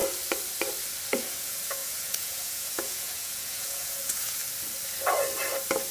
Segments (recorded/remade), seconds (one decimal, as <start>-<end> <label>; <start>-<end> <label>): 0.0-1.2 recorded; 1.2-4.4 remade; 4.4-5.9 recorded